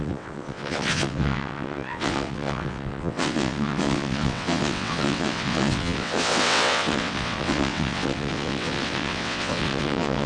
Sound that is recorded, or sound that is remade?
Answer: remade